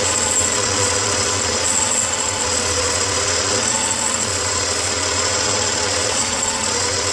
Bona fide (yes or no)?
no